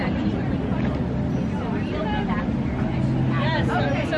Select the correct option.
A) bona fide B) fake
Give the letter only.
A